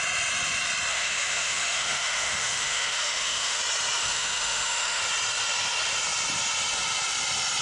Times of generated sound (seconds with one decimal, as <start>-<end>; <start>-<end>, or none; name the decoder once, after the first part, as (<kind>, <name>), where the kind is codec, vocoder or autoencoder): 0.9-3.6 (autoencoder, DAC-VAE); 4.0-5.0